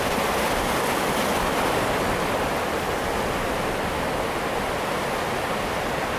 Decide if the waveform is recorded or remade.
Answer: recorded